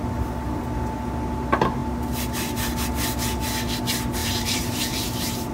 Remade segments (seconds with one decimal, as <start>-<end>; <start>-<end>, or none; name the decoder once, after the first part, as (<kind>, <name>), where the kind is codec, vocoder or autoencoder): 4.2-5.5 (vocoder, BigVGAN v2)